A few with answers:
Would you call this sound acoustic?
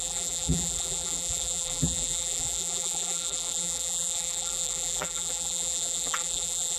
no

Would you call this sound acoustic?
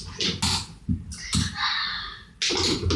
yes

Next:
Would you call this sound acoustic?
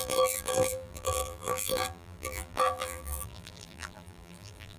no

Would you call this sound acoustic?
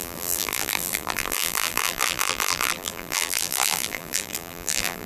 no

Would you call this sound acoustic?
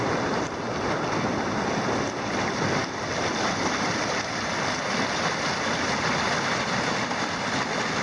yes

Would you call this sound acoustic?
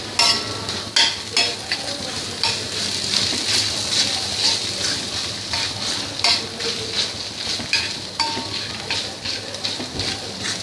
yes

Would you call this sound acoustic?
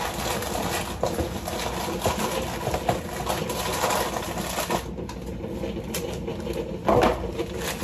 yes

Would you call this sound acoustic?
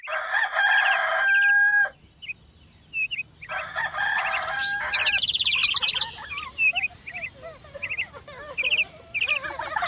yes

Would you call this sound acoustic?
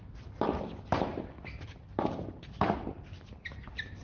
no